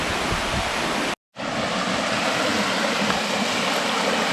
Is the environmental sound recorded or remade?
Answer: recorded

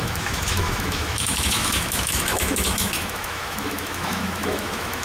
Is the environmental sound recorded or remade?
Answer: remade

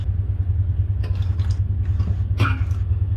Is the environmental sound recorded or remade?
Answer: recorded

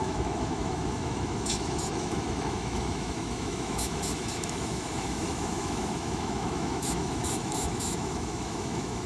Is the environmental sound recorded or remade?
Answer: remade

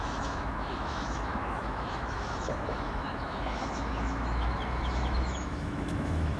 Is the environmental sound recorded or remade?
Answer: remade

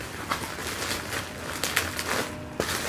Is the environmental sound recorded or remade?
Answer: recorded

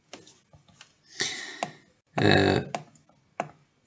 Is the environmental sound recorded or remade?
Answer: recorded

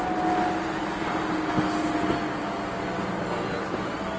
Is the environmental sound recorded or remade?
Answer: recorded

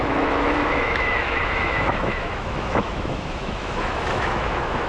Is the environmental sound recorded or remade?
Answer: remade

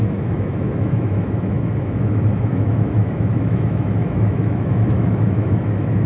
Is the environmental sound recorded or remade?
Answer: remade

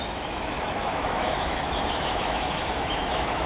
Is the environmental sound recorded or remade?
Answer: remade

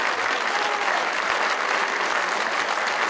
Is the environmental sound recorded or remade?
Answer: recorded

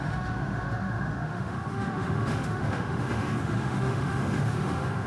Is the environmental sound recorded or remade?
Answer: remade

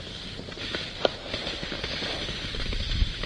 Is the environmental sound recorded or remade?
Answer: recorded